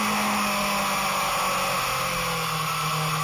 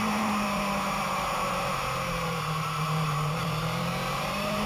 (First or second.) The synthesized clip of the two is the second